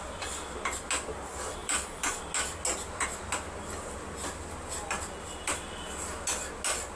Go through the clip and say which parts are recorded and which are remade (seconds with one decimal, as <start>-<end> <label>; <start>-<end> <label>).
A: 0.0-1.6 recorded; 1.6-2.1 remade; 2.1-7.0 recorded